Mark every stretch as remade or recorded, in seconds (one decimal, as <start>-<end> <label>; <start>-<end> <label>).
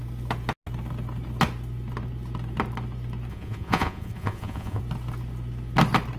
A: 0.0-3.3 recorded; 3.3-4.8 remade; 4.8-6.2 recorded